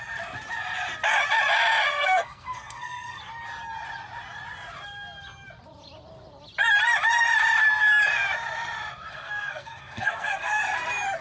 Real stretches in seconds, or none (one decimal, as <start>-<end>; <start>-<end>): 0.0-1.9; 3.2-9.1; 10.6-11.2